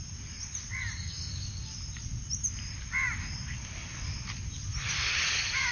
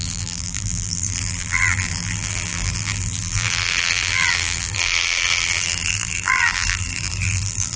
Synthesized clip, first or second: second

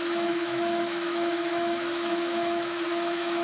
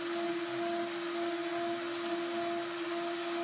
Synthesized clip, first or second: first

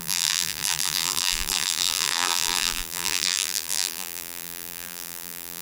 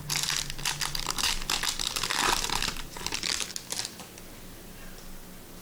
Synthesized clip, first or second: first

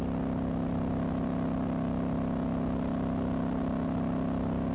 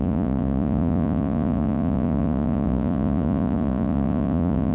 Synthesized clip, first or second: second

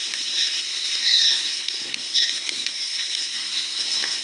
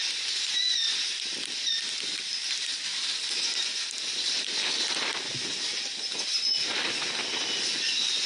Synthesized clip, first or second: first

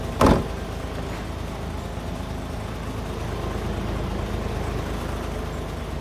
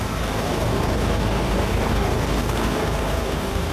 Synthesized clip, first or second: second